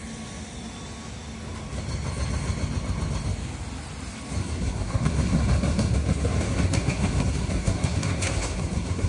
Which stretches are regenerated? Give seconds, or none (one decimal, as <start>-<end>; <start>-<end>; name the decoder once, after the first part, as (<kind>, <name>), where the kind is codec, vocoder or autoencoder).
4.4-9.1 (codec, SNAC)